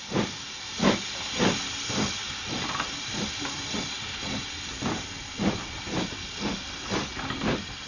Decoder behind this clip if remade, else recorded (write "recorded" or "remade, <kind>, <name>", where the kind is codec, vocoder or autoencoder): recorded